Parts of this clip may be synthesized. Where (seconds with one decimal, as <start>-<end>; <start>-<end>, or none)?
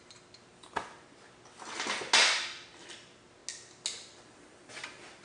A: none